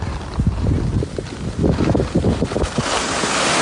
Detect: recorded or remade recorded